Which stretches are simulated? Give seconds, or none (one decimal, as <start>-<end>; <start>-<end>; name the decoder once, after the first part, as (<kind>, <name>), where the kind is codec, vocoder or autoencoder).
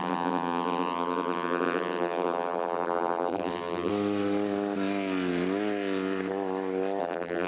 0.0-3.9 (vocoder, BigVGAN v2); 7.0-7.5